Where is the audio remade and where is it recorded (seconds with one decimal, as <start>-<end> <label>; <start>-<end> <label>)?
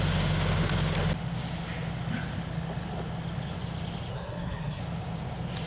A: 0.0-4.1 recorded; 4.1-4.8 remade; 4.8-5.7 recorded